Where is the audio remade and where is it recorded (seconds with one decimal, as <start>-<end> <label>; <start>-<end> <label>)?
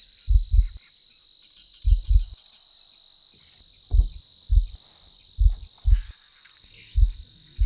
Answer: 0.0-7.7 recorded